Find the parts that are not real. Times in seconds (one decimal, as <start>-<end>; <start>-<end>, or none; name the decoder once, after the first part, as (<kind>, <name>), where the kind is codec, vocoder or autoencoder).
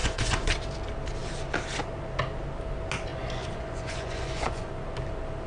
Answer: 0.0-0.5 (vocoder, Vocos); 3.1-4.7